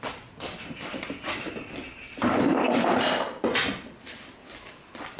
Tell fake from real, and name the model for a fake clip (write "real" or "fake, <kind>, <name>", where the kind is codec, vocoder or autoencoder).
real